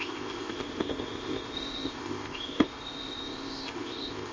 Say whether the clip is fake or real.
fake